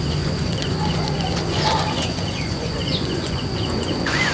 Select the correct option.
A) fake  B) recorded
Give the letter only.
A